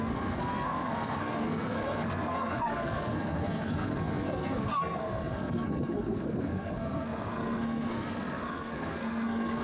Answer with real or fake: fake